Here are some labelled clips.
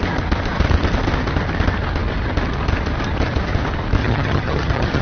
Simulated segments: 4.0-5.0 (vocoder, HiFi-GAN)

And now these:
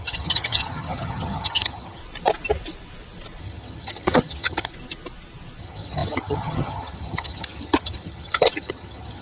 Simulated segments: 0.0-2.0 (vocoder, HiFi-GAN); 3.4-4.7; 5.6-9.2